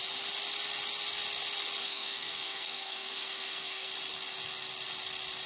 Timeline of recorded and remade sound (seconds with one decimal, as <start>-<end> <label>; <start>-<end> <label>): 0.0-1.8 recorded; 1.8-3.9 remade; 3.9-5.5 recorded